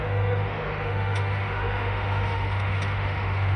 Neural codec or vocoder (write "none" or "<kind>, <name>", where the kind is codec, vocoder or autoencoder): autoencoder, DAC-VAE